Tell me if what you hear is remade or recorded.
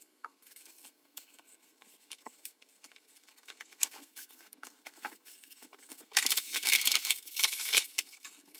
remade